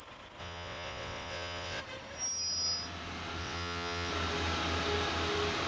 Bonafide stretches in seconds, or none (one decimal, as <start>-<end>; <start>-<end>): 0.0-0.4; 1.8-3.4; 4.1-5.7